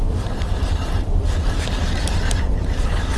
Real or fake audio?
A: fake